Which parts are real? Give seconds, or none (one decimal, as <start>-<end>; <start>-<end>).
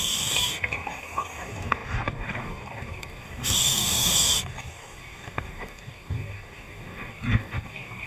none